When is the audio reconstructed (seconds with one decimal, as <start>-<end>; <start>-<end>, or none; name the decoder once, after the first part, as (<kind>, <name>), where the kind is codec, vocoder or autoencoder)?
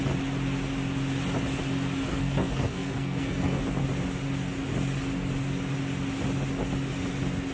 2.1-3.6 (codec, SNAC)